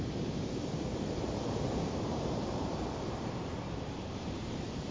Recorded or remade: remade